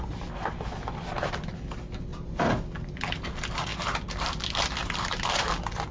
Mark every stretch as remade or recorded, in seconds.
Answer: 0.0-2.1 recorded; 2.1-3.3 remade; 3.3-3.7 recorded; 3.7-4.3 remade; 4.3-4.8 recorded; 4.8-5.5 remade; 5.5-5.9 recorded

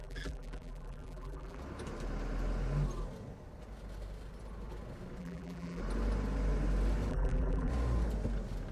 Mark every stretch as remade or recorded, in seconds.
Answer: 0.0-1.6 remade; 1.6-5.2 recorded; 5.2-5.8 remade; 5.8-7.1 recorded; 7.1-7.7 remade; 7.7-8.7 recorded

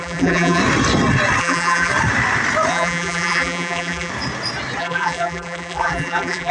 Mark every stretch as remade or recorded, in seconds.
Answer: 0.0-0.6 remade; 0.6-1.4 recorded; 1.4-1.9 remade; 1.9-2.7 recorded; 2.7-4.1 remade; 4.1-4.8 recorded; 4.8-6.5 remade

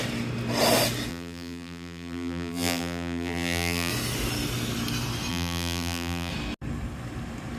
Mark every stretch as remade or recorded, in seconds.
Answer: 0.0-1.1 recorded; 1.1-3.9 remade; 3.9-5.3 recorded; 5.3-6.3 remade; 6.3-7.6 recorded

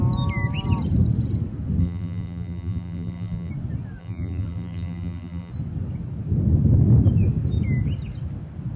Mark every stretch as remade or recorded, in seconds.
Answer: 0.0-1.8 recorded; 1.8-3.5 remade; 3.5-4.0 recorded; 4.0-5.5 remade; 5.5-8.8 recorded

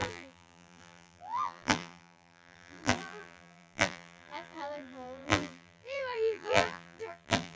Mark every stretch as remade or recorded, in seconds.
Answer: 0.0-7.6 remade